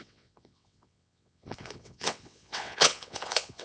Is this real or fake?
fake